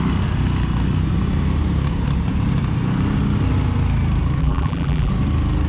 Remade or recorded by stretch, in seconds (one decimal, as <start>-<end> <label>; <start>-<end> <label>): 0.0-4.4 recorded; 4.4-5.1 remade; 5.1-5.7 recorded